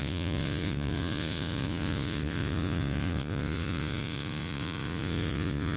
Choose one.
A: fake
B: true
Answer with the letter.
A